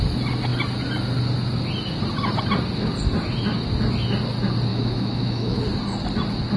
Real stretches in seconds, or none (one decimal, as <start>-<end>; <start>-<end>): 0.0-4.7; 5.6-6.6